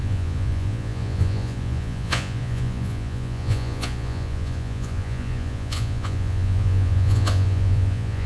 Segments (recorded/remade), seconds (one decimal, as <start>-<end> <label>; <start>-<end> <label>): 0.0-8.3 remade